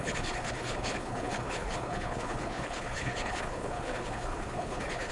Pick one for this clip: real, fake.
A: fake